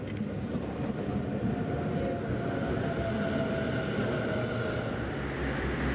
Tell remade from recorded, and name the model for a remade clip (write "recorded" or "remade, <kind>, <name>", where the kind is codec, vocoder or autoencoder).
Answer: recorded